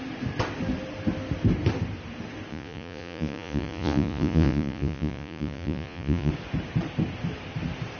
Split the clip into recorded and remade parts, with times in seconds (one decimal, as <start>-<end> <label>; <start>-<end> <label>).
0.0-2.5 recorded; 2.5-6.3 remade; 6.3-8.0 recorded